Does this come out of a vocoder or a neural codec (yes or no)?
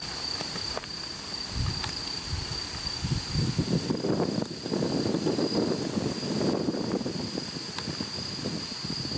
no